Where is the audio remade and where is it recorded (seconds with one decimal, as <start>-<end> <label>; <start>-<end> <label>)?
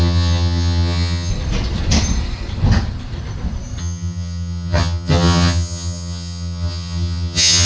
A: 0.0-1.3 remade; 1.3-3.8 recorded; 3.8-7.7 remade